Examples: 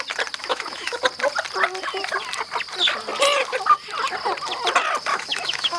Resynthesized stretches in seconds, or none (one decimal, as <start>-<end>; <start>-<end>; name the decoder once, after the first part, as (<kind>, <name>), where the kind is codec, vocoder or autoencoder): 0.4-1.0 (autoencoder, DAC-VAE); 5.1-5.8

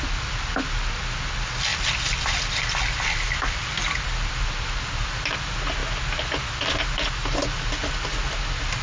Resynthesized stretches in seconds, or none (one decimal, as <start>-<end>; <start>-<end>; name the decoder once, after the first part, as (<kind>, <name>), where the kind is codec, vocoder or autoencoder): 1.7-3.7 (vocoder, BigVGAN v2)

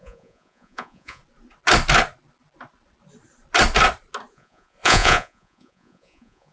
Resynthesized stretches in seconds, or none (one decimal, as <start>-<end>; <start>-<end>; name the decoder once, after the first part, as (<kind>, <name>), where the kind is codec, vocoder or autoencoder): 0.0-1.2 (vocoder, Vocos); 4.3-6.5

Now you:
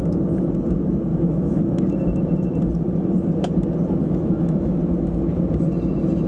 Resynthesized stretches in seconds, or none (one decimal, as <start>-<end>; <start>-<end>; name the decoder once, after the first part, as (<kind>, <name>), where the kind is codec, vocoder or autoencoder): 1.1-1.6 (autoencoder, DAC-VAE); 4.0-4.8

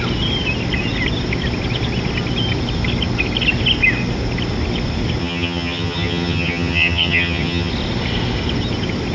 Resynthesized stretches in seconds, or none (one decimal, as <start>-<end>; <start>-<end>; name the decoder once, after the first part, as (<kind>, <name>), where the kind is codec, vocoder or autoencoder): 5.2-7.7 (vocoder, HiFi-GAN)

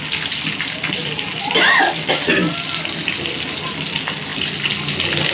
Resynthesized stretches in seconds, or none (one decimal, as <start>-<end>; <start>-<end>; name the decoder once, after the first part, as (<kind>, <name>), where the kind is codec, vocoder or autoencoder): none